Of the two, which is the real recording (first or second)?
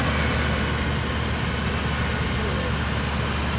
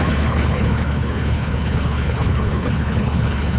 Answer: first